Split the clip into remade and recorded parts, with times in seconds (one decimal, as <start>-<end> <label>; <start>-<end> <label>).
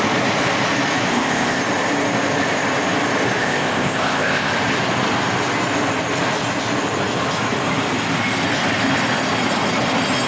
0.0-1.1 recorded; 1.1-1.6 remade; 1.6-3.4 recorded; 3.4-4.5 remade; 4.5-10.3 recorded